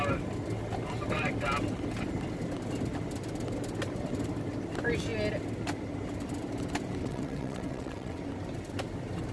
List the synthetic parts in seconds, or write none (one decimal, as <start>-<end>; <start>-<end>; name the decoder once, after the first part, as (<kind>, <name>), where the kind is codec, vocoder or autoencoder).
7.0-8.2 (vocoder, WaveNeXt)